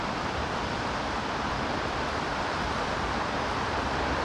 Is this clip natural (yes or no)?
no